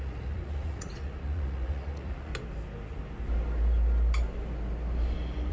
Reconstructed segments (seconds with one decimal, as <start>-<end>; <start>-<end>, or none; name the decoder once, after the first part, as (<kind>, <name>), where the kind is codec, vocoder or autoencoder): 0.0-2.3 (vocoder, Vocos)